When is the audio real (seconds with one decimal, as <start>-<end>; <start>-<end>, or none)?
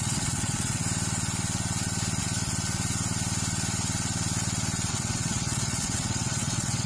0.8-4.9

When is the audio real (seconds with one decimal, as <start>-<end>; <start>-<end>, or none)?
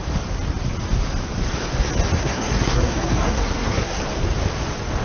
0.0-2.2; 4.0-5.0